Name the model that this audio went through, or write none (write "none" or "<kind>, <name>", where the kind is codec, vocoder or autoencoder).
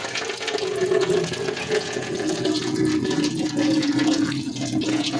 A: vocoder, Vocos